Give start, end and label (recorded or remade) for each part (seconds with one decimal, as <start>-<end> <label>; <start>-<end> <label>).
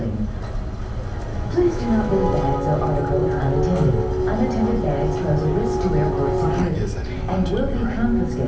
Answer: 0.0-1.3 recorded; 1.3-2.3 remade; 2.3-8.5 recorded